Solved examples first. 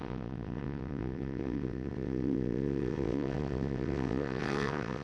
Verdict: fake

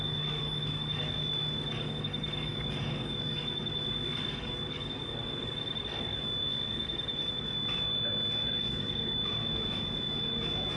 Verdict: fake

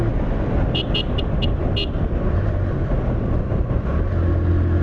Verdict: real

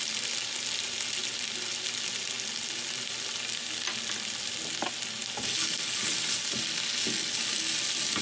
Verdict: real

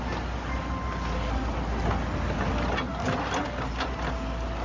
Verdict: real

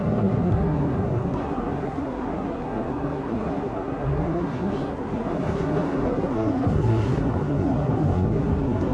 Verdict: fake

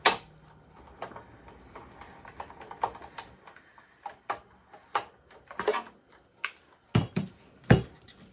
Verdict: real